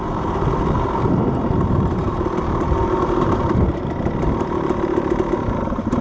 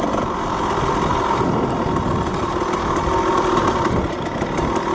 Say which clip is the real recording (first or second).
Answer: second